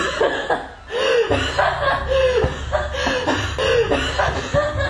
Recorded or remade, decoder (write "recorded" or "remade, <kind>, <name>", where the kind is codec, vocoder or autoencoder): recorded